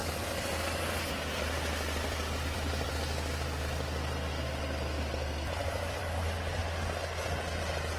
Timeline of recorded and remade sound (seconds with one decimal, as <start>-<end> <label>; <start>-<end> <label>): 0.0-2.9 remade; 2.9-5.6 recorded; 5.6-6.6 remade; 6.6-8.0 recorded